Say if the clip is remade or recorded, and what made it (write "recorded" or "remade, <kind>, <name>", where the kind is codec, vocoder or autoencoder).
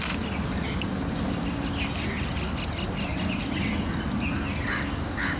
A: recorded